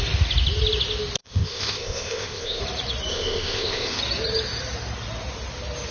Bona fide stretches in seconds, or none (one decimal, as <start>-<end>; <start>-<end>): 0.0-1.2; 2.6-3.1; 4.0-5.9